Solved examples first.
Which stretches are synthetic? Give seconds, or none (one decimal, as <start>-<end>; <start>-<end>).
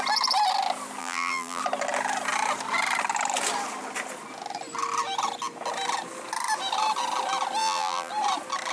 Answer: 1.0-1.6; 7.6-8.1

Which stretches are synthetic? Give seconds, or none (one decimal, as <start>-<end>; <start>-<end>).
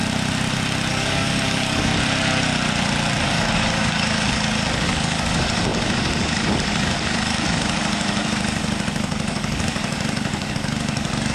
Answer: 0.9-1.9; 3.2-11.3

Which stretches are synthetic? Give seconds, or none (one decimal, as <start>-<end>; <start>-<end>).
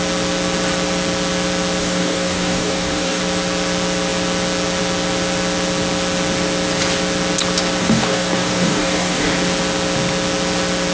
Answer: 1.8-3.2; 7.8-9.3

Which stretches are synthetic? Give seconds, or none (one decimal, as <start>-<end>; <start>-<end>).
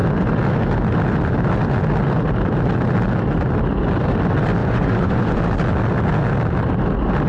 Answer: 4.6-5.4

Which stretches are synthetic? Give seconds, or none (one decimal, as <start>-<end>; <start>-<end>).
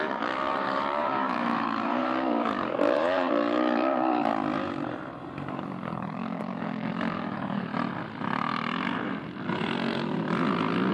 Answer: 0.0-4.3; 5.5-7.7